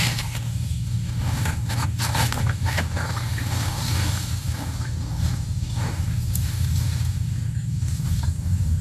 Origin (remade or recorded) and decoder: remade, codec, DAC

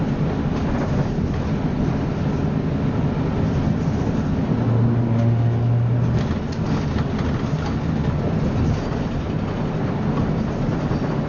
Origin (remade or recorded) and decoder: recorded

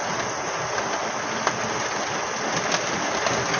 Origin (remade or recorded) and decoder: recorded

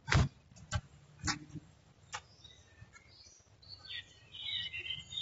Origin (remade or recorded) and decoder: recorded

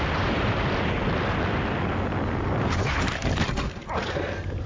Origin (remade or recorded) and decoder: recorded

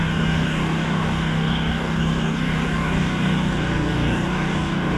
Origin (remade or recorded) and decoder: remade, codec, DAC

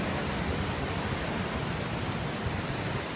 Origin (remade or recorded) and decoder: recorded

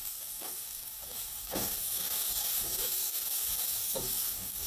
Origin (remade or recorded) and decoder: remade, codec, DAC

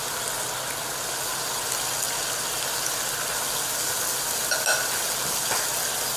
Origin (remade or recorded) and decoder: recorded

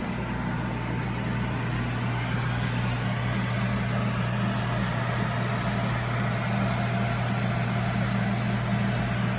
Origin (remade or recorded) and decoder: recorded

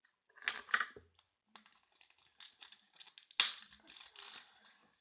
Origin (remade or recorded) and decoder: recorded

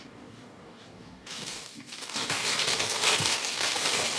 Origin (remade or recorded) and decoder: remade, codec, DAC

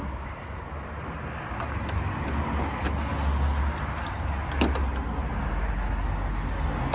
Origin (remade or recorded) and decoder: recorded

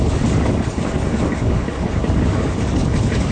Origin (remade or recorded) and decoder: remade, codec, DAC